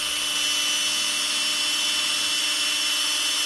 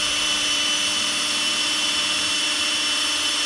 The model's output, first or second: second